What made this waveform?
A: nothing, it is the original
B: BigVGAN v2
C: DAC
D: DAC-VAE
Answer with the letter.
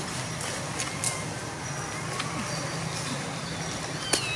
A